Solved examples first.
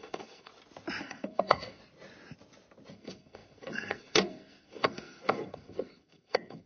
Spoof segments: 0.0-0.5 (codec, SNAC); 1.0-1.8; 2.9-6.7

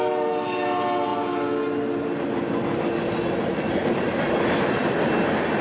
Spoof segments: none

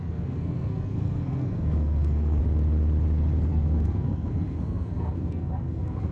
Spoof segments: 0.0-2.4 (codec, SNAC); 3.5-6.1

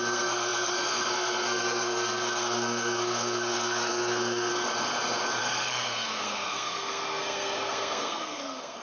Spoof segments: 0.0-4.5 (codec, SNAC); 5.4-8.8